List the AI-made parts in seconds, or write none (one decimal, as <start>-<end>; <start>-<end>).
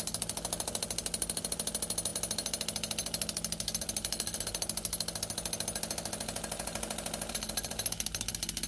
none